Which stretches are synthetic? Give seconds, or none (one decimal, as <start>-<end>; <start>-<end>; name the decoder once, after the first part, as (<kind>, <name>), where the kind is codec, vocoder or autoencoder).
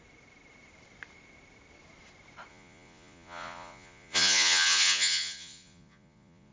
2.5-6.5 (vocoder, Vocos)